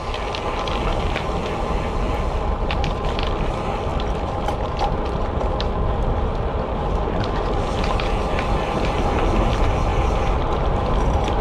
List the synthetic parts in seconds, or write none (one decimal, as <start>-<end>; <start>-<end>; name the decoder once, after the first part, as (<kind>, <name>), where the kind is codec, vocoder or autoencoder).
3.9-7.2 (vocoder, BigVGAN v2); 9.9-11.4